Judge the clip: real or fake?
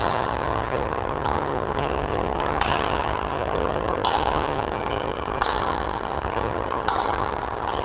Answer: fake